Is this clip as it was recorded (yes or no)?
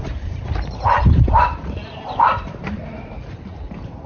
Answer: no